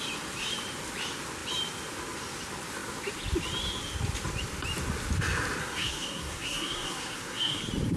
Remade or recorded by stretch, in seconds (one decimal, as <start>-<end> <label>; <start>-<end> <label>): 0.0-5.6 recorded; 5.6-7.6 remade; 7.6-8.0 recorded